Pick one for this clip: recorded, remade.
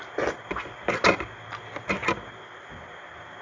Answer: recorded